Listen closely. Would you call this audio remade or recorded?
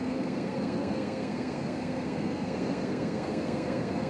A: remade